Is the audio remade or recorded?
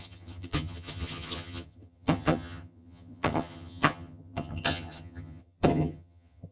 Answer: remade